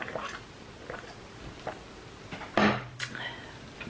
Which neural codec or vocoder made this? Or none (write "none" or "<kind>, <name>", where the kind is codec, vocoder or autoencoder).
none